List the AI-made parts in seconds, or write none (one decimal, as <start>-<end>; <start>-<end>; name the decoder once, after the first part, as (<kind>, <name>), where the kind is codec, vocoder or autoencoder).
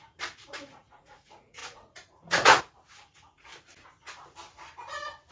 0.0-3.5 (vocoder, Vocos)